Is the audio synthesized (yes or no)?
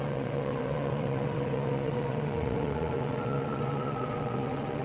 yes